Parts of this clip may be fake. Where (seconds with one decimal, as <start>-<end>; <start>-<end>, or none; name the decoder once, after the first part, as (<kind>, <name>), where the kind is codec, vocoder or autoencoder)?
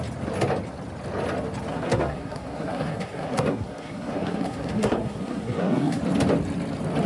1.7-6.0 (codec, SNAC)